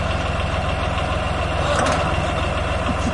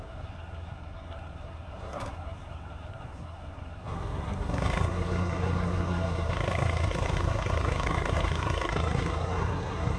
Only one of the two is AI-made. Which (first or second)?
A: second